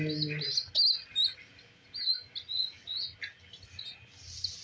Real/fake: real